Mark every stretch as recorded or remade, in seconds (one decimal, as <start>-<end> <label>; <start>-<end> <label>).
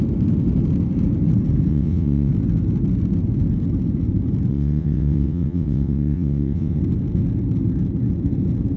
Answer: 0.0-1.7 recorded; 1.7-2.3 remade; 2.3-4.5 recorded; 4.5-6.8 remade; 6.8-8.8 recorded